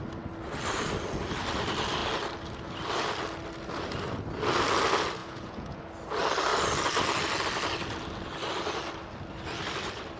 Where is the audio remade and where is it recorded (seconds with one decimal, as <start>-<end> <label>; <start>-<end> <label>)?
0.0-5.2 recorded; 5.2-5.8 remade; 5.8-10.2 recorded

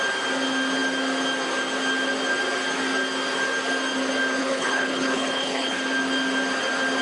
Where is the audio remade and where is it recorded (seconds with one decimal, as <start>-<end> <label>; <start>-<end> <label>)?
0.0-4.4 recorded; 4.4-5.8 remade; 5.8-7.0 recorded

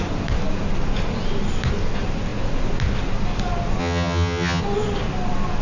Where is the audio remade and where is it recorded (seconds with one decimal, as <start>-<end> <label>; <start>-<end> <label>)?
0.0-3.8 recorded; 3.8-4.6 remade; 4.6-5.6 recorded

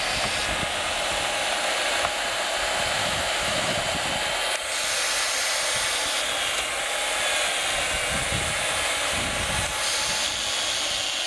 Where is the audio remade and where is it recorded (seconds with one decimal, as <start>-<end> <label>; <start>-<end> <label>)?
0.0-3.0 recorded; 3.0-3.8 remade; 3.8-11.3 recorded

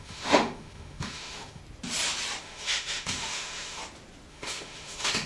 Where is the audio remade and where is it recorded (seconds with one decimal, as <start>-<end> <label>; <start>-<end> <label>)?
0.0-1.6 remade; 1.6-2.4 recorded; 2.4-3.8 remade; 3.8-4.3 recorded; 4.3-5.3 remade

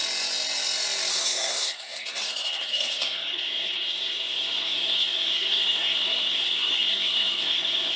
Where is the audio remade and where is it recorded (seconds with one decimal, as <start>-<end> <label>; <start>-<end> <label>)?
0.0-1.1 recorded; 1.1-8.0 remade

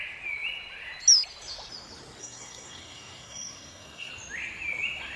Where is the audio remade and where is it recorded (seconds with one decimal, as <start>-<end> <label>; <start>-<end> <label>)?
0.0-2.2 recorded; 2.2-4.1 remade; 4.1-5.2 recorded